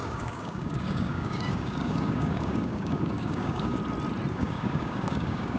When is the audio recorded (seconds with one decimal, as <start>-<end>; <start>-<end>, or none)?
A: 3.8-4.3